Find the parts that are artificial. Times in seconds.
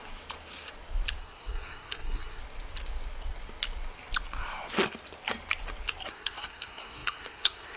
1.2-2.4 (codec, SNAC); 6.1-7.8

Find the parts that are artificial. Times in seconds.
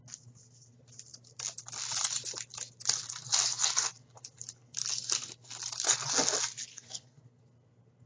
6.7-7.4 (codec, SNAC)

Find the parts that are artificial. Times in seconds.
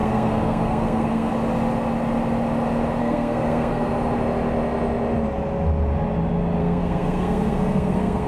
0.0-1.3 (codec, SNAC); 3.0-3.9; 6.6-8.3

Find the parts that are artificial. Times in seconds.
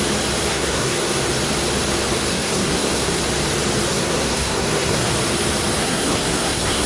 0.5-1.2 (codec, SNAC); 2.3-3.2; 3.9-5.1; 5.8-6.9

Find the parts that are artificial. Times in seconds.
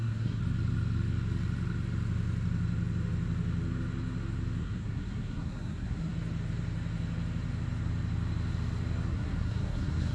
0.0-0.4 (codec, SNAC); 4.6-6.1; 9.1-10.1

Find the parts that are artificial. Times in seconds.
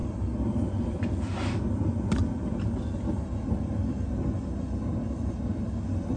none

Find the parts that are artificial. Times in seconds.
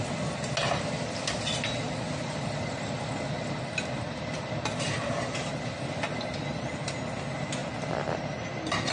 none